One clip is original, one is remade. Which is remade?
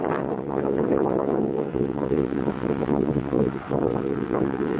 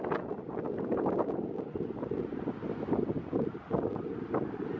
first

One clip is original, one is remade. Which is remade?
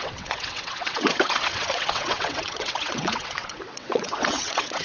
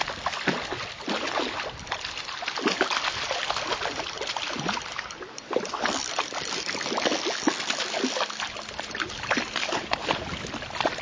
first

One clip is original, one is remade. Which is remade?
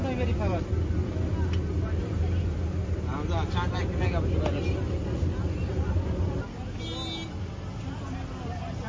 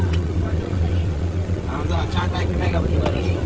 second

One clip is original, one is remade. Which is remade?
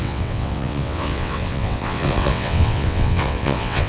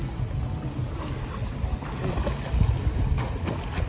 first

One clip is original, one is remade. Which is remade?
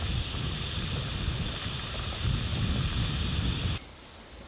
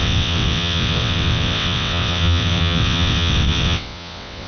second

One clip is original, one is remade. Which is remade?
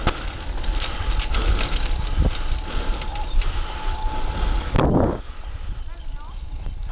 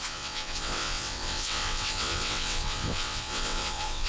second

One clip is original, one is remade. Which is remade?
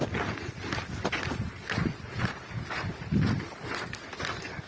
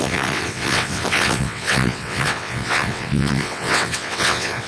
second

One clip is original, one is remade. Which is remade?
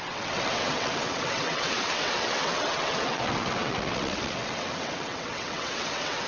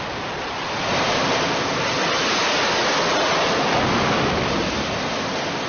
first